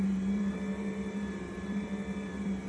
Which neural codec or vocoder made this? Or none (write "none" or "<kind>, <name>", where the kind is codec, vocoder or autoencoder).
vocoder, BigVGAN v2